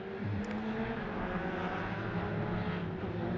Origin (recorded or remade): recorded